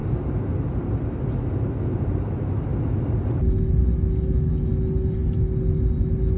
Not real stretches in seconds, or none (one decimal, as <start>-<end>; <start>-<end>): none